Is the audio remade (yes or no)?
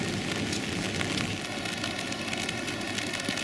no